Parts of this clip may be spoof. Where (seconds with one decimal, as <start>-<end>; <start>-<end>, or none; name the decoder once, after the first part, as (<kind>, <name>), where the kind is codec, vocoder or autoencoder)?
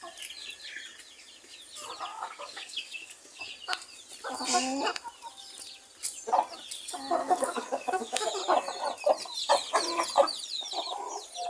2.1-3.4 (codec, DAC); 7.2-8.3